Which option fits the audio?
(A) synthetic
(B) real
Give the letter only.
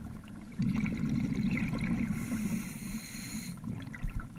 A